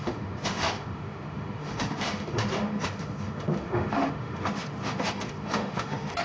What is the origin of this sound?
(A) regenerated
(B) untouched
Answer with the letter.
A